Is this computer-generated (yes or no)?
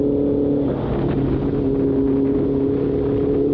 no